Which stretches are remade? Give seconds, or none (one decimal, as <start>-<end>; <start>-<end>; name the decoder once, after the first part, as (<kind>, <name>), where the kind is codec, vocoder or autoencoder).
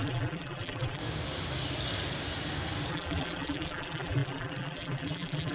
0.0-1.0 (vocoder, BigVGAN v2); 2.9-5.5